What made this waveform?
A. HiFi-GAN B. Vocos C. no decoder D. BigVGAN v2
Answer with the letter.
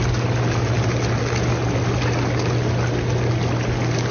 C